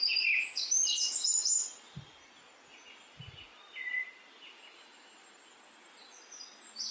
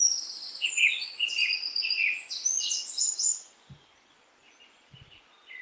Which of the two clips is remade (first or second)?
second